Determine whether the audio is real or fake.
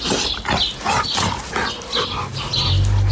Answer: real